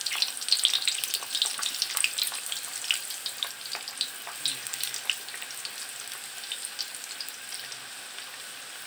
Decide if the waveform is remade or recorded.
recorded